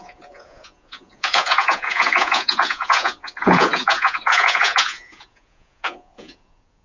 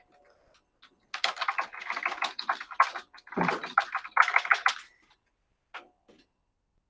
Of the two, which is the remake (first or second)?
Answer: first